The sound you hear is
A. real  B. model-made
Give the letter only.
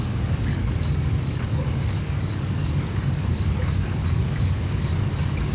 B